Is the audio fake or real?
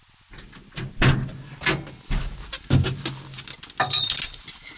real